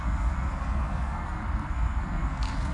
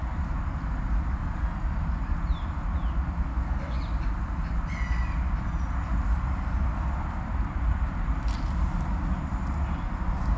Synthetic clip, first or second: first